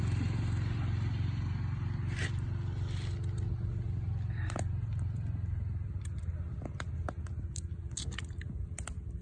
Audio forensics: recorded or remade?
recorded